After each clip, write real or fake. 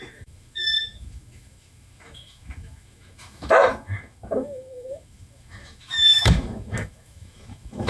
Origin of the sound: fake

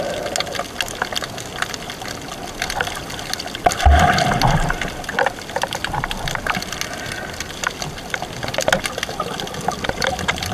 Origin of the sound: real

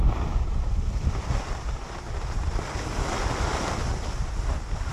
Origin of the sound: real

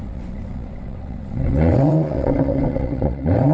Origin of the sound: fake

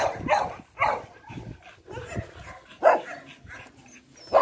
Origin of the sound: real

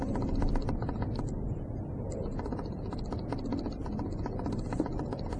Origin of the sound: real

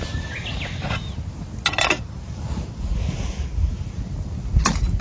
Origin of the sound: real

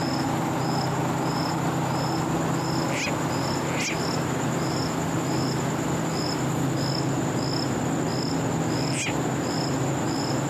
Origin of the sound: real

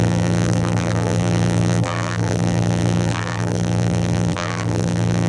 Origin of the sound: fake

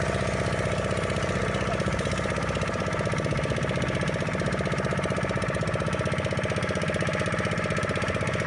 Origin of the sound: real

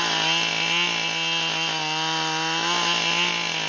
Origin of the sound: real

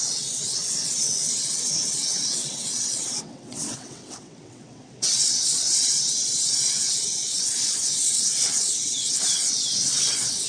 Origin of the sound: fake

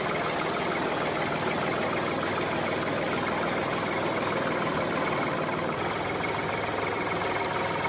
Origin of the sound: real